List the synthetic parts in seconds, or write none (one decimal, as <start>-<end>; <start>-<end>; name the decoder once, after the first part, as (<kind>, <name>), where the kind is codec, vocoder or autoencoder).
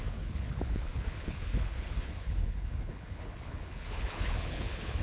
0.0-5.0 (codec, HILCodec)